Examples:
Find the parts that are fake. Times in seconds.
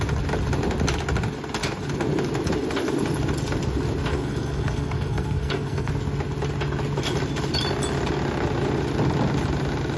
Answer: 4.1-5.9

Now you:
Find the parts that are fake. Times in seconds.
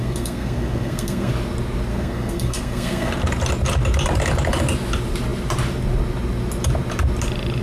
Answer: 0.0-1.3; 1.9-3.1